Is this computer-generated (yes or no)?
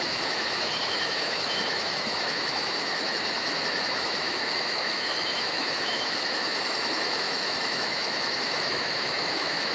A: yes